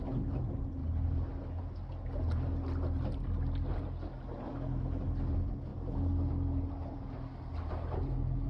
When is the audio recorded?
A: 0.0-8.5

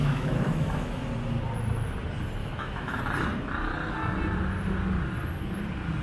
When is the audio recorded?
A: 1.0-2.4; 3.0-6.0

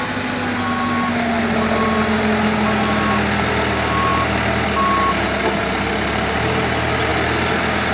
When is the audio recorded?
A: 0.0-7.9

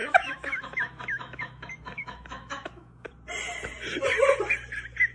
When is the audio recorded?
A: 3.1-5.1